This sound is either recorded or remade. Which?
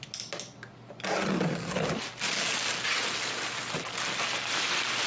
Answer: recorded